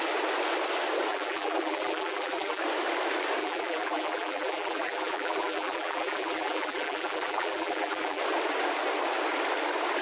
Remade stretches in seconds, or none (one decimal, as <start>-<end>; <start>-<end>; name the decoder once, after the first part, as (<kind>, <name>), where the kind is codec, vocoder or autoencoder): 1.1-2.6 (vocoder, BigVGAN v2); 3.4-8.2